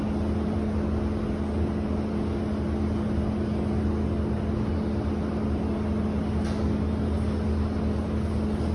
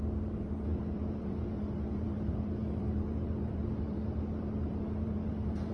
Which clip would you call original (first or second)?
first